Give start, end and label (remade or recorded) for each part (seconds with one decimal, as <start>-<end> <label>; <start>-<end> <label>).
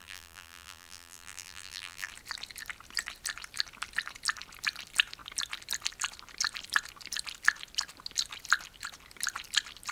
0.0-2.1 remade; 2.1-9.9 recorded